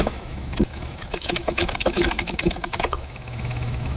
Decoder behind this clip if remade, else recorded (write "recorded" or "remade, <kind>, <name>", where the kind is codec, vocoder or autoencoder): remade, autoencoder, DAC-VAE